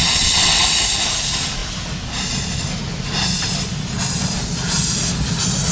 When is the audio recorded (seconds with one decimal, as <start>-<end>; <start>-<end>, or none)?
0.8-5.7